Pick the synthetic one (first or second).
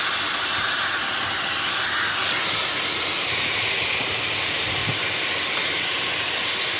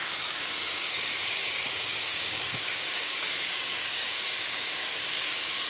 second